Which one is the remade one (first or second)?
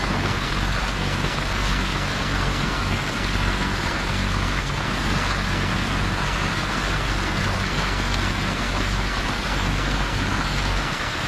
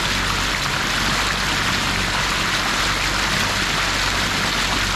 first